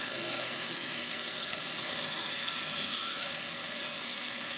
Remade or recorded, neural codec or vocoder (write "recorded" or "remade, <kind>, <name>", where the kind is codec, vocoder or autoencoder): remade, codec, SNAC